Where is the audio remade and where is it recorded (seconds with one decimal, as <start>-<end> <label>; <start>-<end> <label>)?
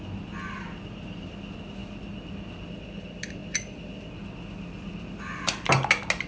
0.0-6.3 recorded